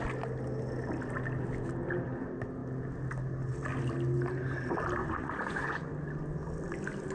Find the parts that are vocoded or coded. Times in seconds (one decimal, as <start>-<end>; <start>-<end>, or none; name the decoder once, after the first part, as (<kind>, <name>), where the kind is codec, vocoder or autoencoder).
5.0-5.9 (vocoder, Vocos)

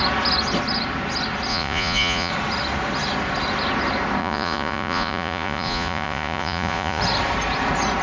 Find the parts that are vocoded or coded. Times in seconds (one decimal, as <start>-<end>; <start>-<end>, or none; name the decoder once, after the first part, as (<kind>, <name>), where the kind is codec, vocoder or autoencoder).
1.5-2.3 (vocoder, Vocos); 4.2-7.0

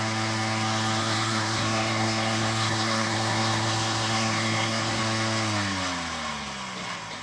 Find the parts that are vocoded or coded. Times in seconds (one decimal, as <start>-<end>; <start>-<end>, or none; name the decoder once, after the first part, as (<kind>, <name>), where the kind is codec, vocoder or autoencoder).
1.0-5.0 (codec, SNAC)

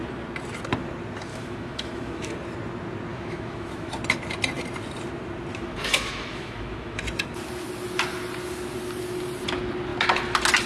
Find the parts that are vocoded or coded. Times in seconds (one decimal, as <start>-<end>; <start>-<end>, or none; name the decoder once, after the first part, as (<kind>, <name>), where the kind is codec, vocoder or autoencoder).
1.3-2.3 (autoencoder, DAC-VAE); 3.1-3.9; 5.5-7.0

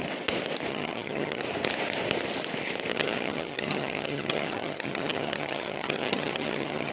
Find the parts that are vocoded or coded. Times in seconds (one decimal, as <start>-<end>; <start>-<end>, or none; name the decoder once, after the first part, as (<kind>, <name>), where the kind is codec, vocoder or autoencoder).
0.7-1.4 (vocoder, HiFi-GAN); 2.9-6.9

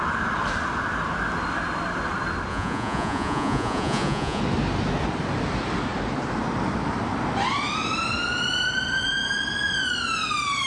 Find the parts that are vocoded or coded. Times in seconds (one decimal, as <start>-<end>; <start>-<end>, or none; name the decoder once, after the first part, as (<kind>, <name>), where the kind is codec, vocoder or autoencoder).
2.5-4.4 (vocoder, Vocos)

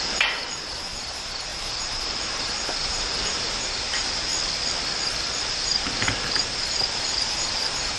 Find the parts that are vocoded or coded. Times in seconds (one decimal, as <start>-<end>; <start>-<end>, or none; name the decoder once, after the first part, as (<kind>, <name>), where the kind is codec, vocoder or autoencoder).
0.0-4.3 (vocoder, BigVGAN v2); 5.5-8.0

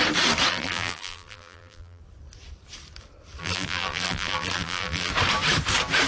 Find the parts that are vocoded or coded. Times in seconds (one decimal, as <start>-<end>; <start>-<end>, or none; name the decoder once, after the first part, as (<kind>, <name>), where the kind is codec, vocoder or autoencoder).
0.5-2.0 (vocoder, BigVGAN v2); 3.4-5.1